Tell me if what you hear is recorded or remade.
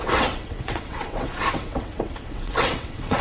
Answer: remade